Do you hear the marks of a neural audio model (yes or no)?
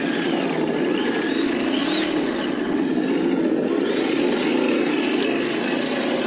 no